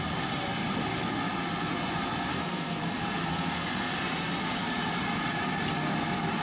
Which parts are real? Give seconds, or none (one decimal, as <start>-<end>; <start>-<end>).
0.0-2.3; 2.8-3.3; 3.9-6.4